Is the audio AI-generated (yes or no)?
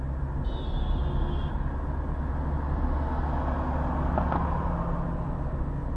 no